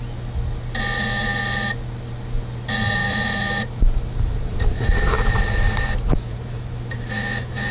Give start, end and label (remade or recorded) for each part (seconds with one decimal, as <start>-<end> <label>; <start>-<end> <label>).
0.0-3.0 recorded; 3.0-7.7 remade